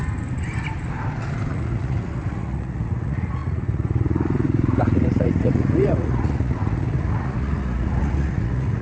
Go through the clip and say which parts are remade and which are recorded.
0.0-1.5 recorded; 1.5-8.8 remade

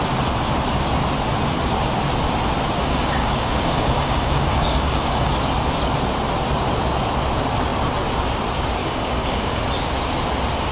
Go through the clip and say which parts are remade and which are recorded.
0.0-2.8 recorded; 2.8-5.3 remade; 5.3-8.8 recorded; 8.8-9.6 remade; 9.6-10.7 recorded

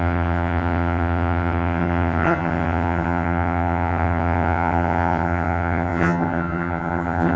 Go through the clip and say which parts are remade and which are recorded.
0.0-7.4 remade

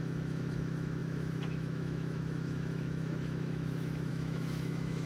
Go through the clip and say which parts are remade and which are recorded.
0.0-5.1 remade